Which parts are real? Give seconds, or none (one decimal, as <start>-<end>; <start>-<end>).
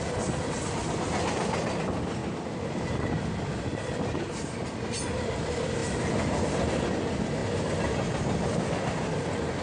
0.0-9.6